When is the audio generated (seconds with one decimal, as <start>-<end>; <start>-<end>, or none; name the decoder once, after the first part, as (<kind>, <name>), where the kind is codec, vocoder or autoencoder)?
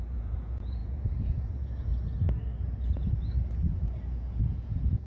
0.0-1.9 (vocoder, Vocos); 4.4-5.1